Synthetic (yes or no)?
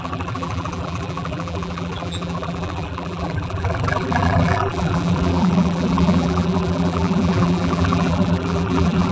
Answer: yes